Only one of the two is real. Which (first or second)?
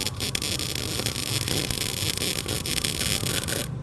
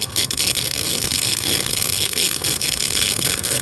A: first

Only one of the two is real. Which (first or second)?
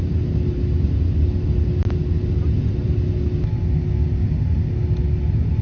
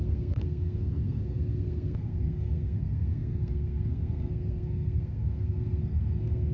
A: first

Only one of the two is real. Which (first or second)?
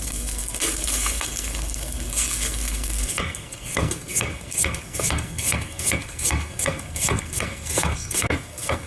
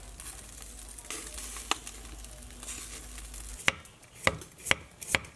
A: second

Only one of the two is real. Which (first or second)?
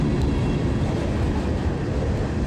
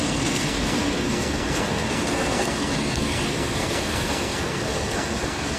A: first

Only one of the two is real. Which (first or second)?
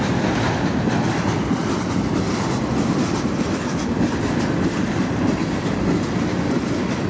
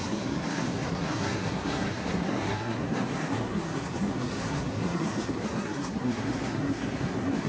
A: first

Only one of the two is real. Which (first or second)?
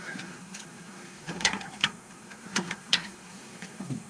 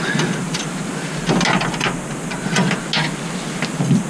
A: second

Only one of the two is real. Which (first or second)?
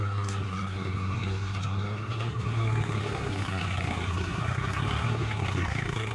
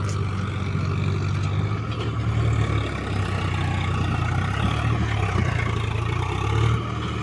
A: second